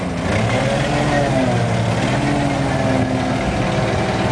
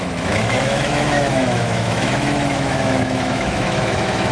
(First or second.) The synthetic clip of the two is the second